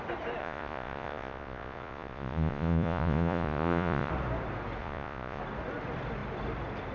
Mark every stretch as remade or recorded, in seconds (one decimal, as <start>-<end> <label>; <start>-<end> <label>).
0.0-0.4 recorded; 0.4-4.1 remade; 4.1-4.8 recorded; 4.8-5.4 remade; 5.4-6.9 recorded